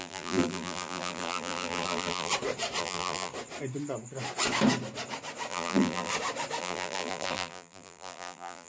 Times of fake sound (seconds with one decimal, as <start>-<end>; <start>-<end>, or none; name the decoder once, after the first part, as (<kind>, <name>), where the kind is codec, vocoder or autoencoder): 0.0-2.3 (vocoder, BigVGAN v2); 2.8-3.3; 5.5-6.1; 6.6-8.7